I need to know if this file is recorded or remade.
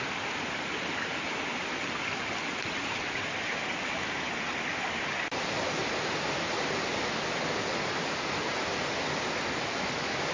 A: recorded